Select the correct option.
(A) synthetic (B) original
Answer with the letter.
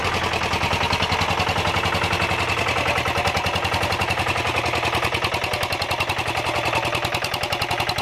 B